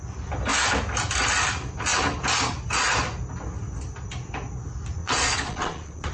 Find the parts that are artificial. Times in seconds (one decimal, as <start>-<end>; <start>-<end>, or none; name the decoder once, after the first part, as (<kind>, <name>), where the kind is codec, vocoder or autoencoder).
5.0-6.1 (vocoder, Vocos)